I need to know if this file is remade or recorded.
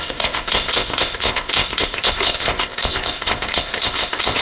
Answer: remade